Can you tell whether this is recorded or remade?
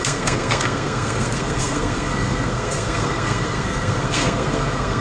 remade